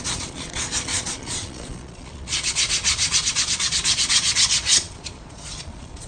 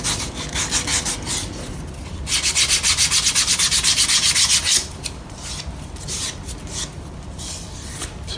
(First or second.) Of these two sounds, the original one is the second